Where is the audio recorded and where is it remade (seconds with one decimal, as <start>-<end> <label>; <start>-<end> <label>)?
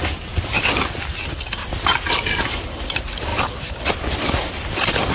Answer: 0.0-5.1 recorded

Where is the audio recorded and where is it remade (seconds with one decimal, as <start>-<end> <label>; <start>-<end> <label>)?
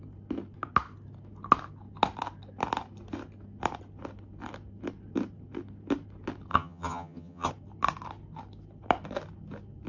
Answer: 0.0-6.5 recorded; 6.5-7.5 remade; 7.5-9.9 recorded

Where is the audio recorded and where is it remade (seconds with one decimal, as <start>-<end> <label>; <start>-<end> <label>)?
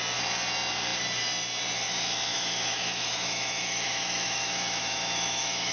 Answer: 0.0-2.3 recorded; 2.3-5.7 remade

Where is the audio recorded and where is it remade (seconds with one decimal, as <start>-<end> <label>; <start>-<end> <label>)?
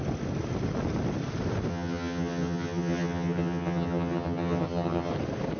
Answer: 0.0-1.7 recorded; 1.7-5.1 remade; 5.1-5.6 recorded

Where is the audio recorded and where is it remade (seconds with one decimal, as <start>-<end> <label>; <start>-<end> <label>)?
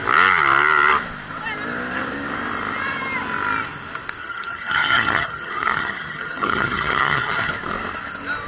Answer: 0.0-4.2 recorded; 4.2-7.5 remade; 7.5-8.5 recorded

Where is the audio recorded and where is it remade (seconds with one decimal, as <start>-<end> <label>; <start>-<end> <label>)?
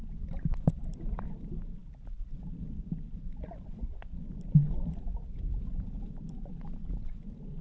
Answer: 0.0-7.6 recorded